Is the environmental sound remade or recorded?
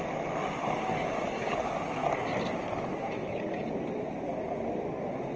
recorded